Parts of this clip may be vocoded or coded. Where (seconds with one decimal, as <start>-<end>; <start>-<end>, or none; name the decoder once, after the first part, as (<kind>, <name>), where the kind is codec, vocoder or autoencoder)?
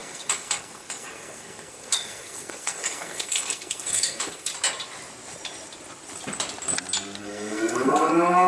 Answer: 0.0-4.5 (codec, SNAC); 7.2-8.5